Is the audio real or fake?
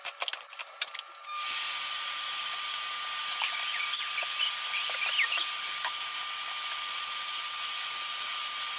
real